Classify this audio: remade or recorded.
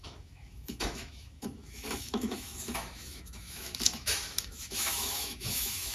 remade